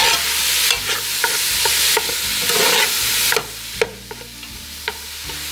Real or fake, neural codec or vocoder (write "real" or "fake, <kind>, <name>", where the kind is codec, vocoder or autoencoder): real